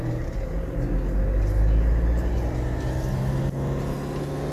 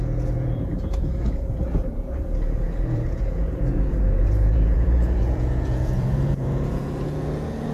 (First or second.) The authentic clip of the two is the first